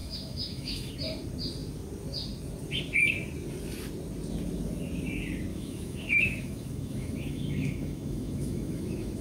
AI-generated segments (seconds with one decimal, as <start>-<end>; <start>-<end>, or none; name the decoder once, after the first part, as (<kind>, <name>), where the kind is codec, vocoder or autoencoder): 0.0-0.9 (autoencoder, DAC-VAE); 5.5-9.2